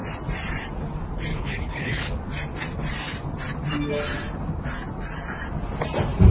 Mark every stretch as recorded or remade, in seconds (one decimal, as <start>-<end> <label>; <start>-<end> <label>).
0.0-1.3 recorded; 1.3-2.2 remade; 2.2-6.3 recorded